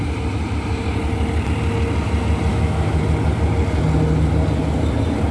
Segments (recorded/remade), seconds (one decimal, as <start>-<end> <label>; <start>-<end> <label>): 0.0-2.5 recorded; 2.5-3.0 remade; 3.0-5.3 recorded